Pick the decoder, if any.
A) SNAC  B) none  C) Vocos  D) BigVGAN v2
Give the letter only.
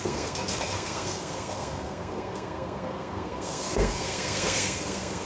A